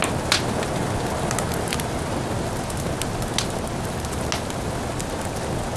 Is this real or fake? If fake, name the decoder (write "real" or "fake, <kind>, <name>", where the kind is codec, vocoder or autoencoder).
real